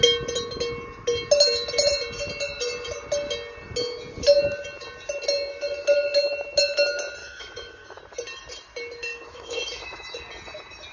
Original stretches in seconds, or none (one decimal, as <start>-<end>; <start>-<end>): 0.0-7.2; 8.0-9.0; 10.2-10.9